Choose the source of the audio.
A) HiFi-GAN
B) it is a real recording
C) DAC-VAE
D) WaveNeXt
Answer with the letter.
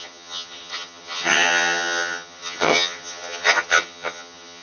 A